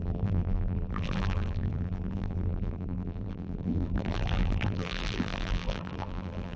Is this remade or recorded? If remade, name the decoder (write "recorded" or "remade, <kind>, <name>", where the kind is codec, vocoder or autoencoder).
remade, vocoder, BigVGAN v2